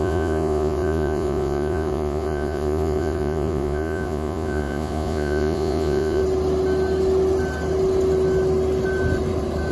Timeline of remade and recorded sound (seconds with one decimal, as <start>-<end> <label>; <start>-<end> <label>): 0.0-6.2 remade; 6.2-9.7 recorded